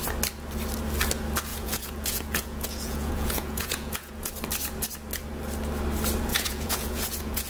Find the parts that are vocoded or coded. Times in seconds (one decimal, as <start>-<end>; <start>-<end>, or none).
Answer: 1.5-4.3; 6.3-7.5